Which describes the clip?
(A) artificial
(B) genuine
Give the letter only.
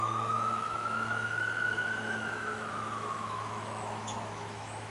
A